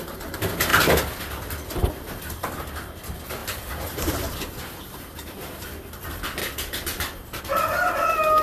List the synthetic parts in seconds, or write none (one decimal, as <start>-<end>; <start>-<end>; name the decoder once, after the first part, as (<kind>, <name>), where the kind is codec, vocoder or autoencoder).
0.7-2.2 (vocoder, BigVGAN v2); 6.4-7.4